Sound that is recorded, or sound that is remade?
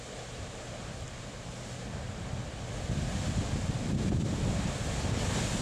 recorded